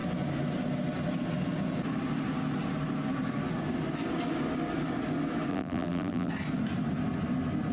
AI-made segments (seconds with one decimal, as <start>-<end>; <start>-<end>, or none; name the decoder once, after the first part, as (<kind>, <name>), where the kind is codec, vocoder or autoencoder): 5.5-6.3 (vocoder, BigVGAN v2)